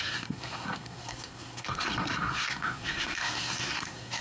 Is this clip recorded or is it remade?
remade